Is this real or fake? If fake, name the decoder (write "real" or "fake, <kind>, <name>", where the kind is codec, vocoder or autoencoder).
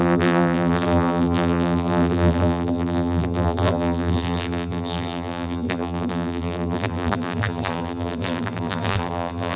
fake, vocoder, BigVGAN v2